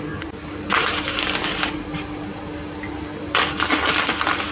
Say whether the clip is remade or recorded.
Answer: recorded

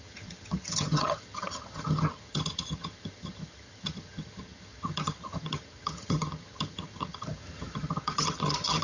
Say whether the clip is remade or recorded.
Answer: remade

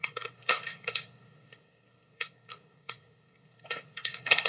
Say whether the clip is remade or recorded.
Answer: remade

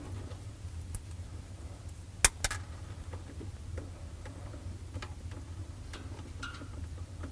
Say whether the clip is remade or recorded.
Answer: recorded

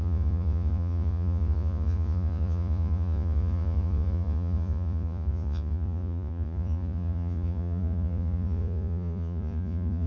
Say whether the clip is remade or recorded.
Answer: remade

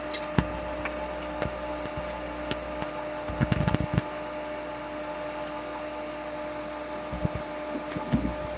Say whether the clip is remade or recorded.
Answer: recorded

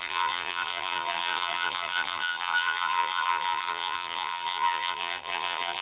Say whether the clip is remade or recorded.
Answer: remade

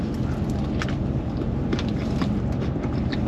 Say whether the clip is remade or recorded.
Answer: recorded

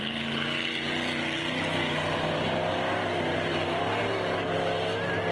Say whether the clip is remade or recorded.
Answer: recorded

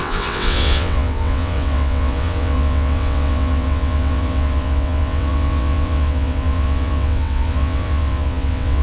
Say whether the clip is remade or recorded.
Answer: remade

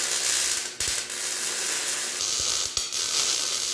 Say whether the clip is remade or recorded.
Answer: recorded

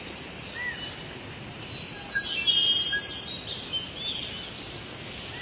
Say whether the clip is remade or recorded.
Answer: recorded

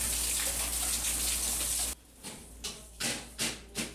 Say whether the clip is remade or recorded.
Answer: recorded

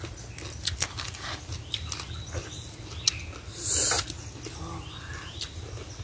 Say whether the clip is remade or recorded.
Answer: recorded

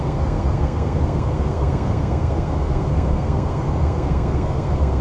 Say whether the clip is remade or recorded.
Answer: remade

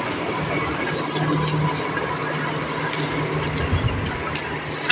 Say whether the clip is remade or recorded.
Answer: recorded